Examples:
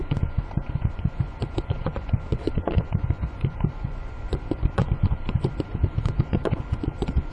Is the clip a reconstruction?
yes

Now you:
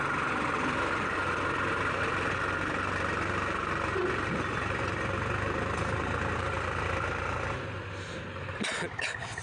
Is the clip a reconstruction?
no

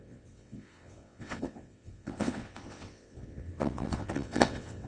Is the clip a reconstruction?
yes